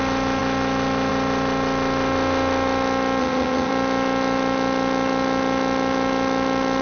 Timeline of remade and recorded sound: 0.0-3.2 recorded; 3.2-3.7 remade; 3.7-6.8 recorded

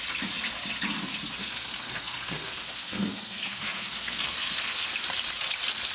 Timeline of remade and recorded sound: 0.0-1.4 recorded; 1.4-4.9 remade; 4.9-5.9 recorded

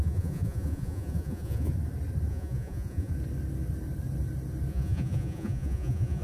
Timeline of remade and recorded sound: 0.0-1.7 remade; 1.7-2.3 recorded; 2.3-3.1 remade; 3.1-4.7 recorded; 4.7-6.2 remade

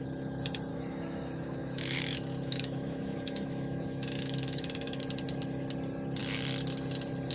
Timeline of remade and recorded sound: 0.0-0.7 recorded; 0.7-5.0 remade; 5.0-7.3 recorded

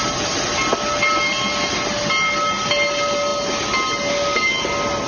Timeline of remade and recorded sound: 0.0-5.1 recorded

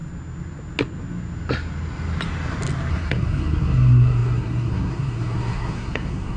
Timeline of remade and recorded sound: 0.0-2.9 recorded; 2.9-6.4 remade

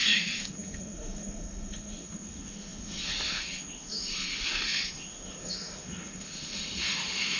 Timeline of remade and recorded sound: 0.0-7.4 remade

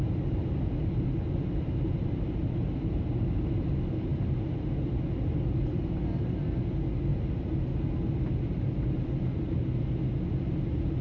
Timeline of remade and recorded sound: 0.0-11.0 recorded